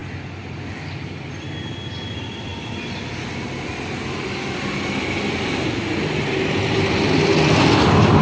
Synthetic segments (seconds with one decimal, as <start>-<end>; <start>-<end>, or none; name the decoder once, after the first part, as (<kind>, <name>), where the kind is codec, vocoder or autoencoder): none